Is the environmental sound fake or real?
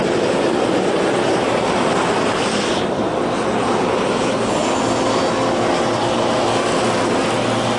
real